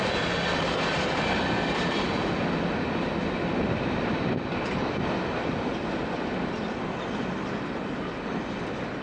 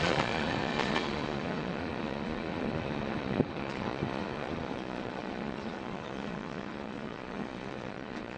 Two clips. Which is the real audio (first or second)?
first